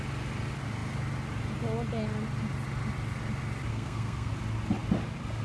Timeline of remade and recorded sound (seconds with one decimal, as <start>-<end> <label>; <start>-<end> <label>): 0.0-3.7 recorded; 3.7-4.3 remade; 4.3-5.4 recorded